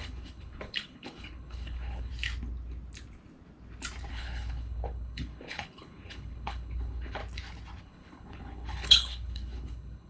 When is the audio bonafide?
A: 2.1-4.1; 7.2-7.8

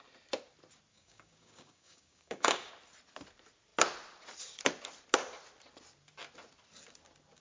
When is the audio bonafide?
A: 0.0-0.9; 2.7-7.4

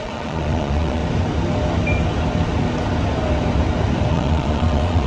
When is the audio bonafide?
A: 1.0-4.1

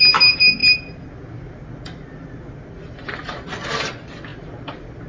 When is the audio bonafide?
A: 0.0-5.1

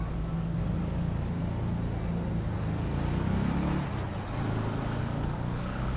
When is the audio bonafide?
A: 1.4-5.0